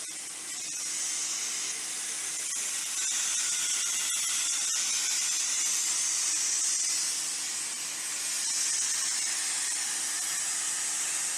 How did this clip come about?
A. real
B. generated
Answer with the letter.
A